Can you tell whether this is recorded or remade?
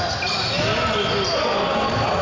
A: recorded